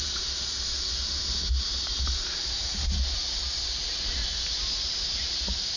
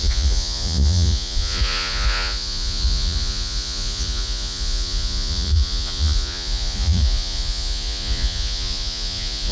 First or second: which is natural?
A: first